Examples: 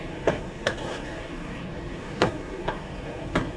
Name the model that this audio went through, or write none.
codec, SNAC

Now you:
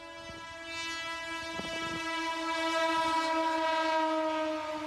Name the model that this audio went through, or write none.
none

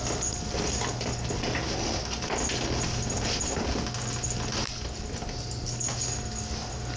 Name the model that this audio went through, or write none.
none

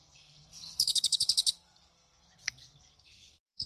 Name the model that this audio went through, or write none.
codec, SNAC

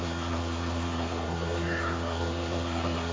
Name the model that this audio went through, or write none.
codec, SNAC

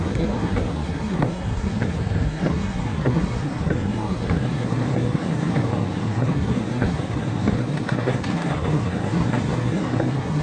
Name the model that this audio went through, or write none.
codec, SNAC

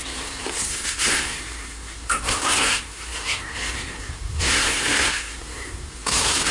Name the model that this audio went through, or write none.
codec, SNAC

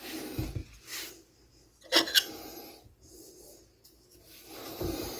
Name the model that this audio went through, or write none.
none